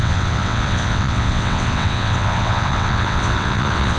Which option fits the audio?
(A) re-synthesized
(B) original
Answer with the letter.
A